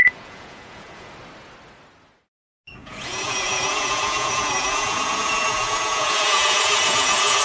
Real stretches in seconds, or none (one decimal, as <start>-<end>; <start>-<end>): 1.1-2.8